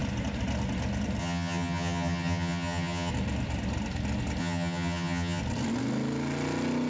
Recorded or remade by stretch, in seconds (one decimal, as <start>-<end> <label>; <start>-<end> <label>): 0.0-1.2 recorded; 1.2-3.1 remade; 3.1-4.4 recorded; 4.4-5.4 remade; 5.4-6.9 recorded